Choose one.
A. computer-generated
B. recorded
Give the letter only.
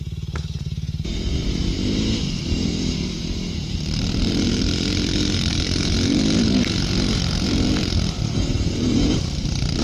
A